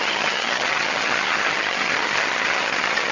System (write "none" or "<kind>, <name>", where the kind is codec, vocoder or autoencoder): vocoder, HiFi-GAN